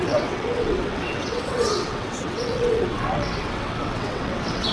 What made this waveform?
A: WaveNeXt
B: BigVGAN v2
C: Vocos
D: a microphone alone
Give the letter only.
A